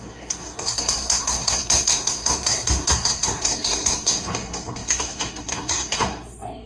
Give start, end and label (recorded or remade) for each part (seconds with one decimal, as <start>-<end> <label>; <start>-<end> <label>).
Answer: 0.0-6.7 remade